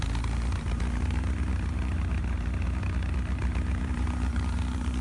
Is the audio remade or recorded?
remade